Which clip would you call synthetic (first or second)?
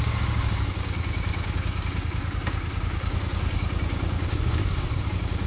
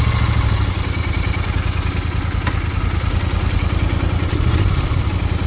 first